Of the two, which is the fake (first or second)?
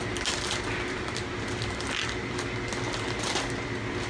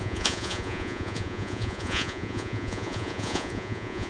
second